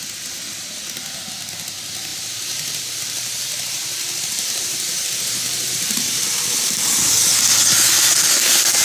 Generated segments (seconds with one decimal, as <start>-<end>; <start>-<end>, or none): 2.1-7.3